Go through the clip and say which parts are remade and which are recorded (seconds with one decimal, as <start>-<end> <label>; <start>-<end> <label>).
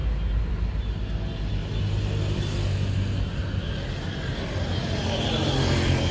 0.0-6.1 recorded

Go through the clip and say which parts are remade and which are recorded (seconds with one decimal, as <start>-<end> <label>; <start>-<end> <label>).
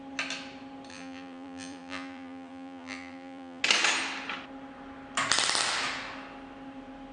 0.0-0.9 recorded; 0.9-3.6 remade; 3.6-7.1 recorded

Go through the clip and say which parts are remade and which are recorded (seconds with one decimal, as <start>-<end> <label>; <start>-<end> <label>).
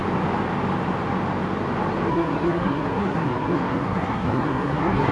0.0-2.1 recorded; 2.1-5.1 remade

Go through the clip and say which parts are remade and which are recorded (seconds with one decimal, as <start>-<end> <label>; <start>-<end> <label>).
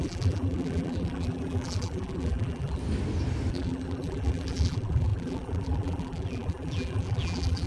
0.0-2.8 remade; 2.8-3.5 recorded; 3.5-7.7 remade